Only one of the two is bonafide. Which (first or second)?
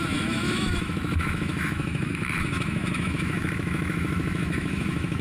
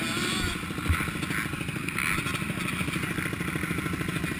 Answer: second